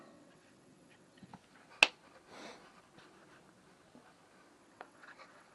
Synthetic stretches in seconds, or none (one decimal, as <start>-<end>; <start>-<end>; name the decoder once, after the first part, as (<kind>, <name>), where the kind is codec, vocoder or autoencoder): 0.0-1.3 (vocoder, WaveNeXt); 4.6-5.5